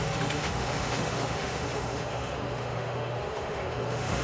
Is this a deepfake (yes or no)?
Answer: yes